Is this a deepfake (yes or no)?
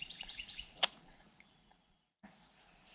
yes